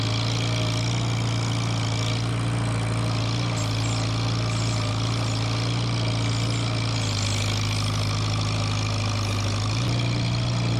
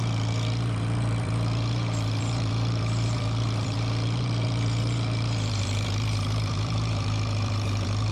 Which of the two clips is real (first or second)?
first